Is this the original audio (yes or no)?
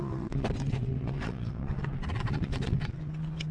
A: no